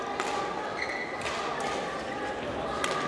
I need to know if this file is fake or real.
real